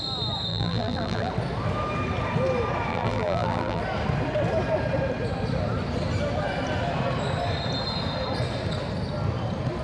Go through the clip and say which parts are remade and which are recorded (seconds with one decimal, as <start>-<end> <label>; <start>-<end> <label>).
0.0-0.5 recorded; 0.5-1.3 remade; 1.3-2.9 recorded; 2.9-3.8 remade; 3.8-9.8 recorded